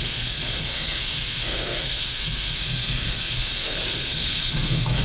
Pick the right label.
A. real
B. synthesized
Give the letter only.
B